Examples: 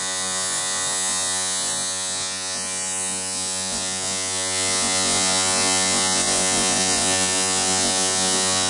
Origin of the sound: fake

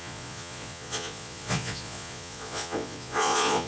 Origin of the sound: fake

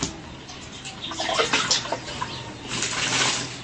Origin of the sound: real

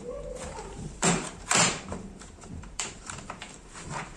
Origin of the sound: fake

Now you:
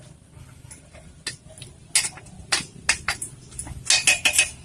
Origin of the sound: real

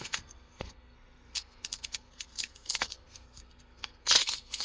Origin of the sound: fake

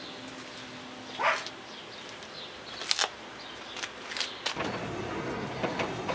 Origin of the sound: real